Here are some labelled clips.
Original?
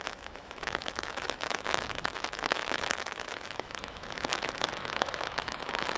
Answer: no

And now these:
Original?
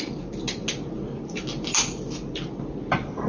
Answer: yes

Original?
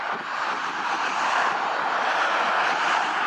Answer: yes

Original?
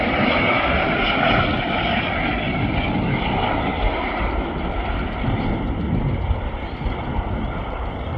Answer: yes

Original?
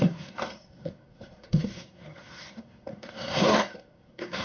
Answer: no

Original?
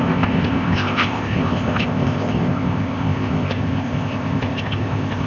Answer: no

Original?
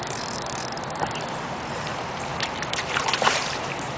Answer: no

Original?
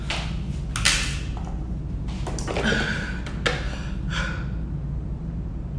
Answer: yes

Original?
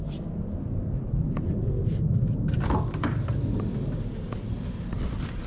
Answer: yes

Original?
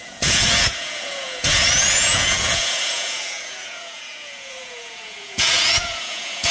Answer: no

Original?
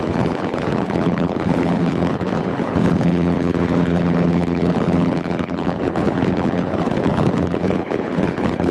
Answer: no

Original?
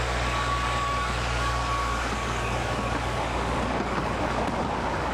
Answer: no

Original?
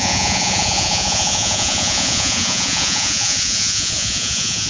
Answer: no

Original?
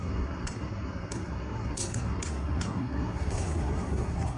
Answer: no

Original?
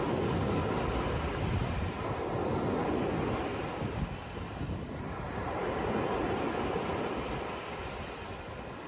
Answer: yes